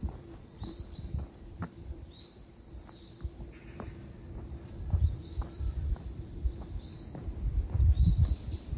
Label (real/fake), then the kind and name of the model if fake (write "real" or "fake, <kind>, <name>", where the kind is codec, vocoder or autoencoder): fake, vocoder, BigVGAN v2